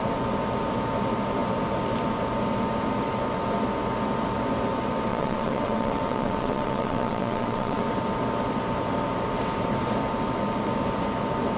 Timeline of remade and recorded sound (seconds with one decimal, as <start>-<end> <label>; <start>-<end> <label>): 0.0-5.1 recorded; 5.1-7.8 remade; 7.8-11.6 recorded